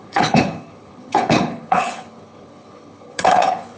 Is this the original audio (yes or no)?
no